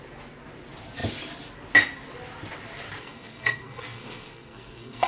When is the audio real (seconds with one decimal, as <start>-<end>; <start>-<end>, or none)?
0.0-3.0